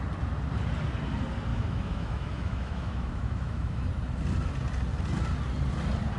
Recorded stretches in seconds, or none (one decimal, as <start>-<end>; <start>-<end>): 0.0-1.5; 3.8-6.2